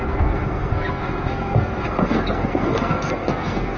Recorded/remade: remade